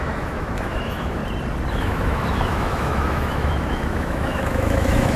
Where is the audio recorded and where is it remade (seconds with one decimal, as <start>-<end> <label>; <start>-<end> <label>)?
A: 0.0-1.2 remade; 1.2-1.7 recorded; 1.7-5.2 remade